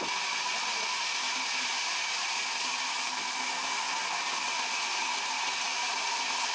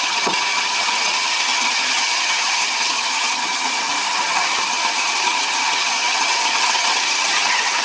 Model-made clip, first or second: second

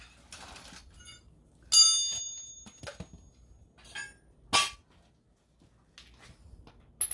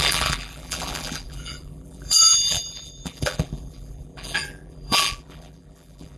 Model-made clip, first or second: second